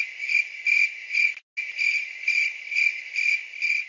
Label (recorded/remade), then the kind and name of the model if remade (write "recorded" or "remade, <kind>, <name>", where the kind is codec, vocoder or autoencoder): recorded